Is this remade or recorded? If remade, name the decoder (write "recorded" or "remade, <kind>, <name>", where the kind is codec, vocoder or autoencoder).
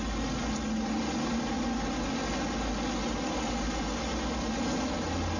recorded